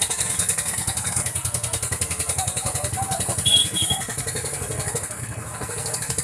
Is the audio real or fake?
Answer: fake